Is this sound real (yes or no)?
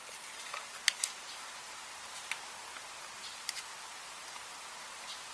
yes